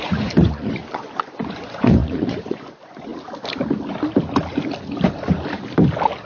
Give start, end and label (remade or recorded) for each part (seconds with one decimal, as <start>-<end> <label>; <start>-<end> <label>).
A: 0.0-3.1 remade; 3.1-6.3 recorded